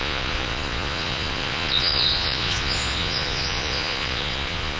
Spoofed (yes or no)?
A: yes